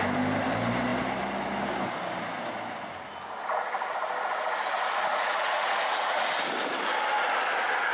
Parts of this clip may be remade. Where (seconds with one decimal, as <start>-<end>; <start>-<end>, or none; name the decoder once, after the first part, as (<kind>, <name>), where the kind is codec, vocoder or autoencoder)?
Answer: 5.1-6.3 (vocoder, Vocos)